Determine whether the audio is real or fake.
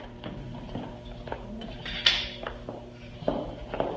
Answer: real